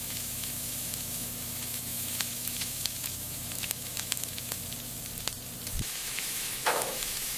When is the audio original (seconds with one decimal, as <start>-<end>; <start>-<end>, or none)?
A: 4.6-5.8